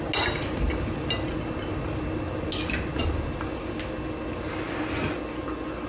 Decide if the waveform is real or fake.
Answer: real